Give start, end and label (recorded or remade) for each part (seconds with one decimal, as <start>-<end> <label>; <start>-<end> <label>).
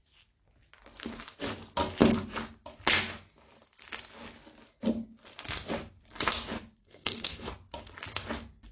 0.0-6.8 recorded; 6.8-7.5 remade; 7.5-8.7 recorded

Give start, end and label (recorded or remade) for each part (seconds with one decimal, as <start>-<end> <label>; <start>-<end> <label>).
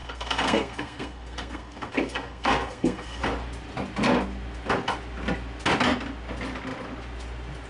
0.0-3.2 remade; 3.2-7.7 recorded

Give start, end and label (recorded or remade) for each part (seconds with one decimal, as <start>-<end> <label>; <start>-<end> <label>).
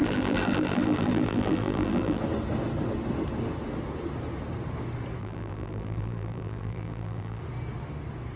0.0-2.2 remade; 2.2-5.2 recorded; 5.2-7.4 remade; 7.4-8.4 recorded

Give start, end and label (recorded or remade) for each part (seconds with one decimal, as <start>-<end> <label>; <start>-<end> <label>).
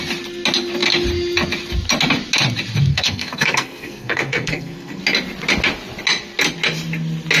0.0-2.9 recorded; 2.9-5.0 remade; 5.0-7.4 recorded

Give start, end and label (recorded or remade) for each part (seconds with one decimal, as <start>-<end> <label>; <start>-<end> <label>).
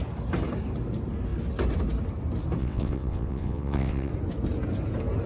0.0-2.6 recorded; 2.6-4.1 remade; 4.1-5.3 recorded